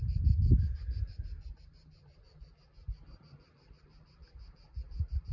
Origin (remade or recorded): recorded